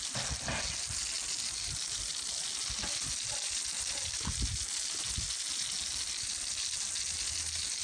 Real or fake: real